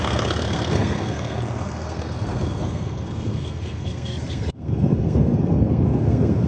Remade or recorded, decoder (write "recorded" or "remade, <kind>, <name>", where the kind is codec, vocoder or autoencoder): remade, codec, SNAC